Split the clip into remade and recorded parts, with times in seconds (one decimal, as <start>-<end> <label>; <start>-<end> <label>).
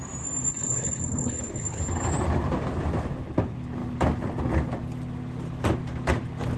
0.0-0.5 recorded; 0.5-1.8 remade; 1.8-6.6 recorded